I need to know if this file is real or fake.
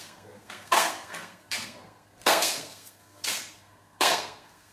fake